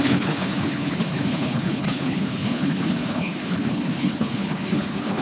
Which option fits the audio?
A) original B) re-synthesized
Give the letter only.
B